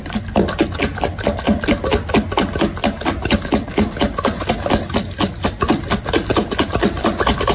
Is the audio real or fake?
real